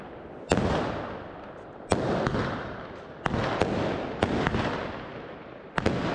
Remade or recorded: recorded